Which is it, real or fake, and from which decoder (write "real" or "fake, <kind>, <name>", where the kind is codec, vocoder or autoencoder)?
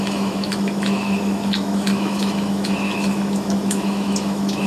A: fake, autoencoder, DAC-VAE